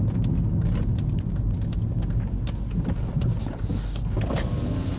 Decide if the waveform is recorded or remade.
recorded